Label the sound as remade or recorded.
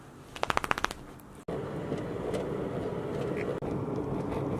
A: recorded